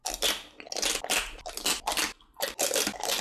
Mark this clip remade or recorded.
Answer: recorded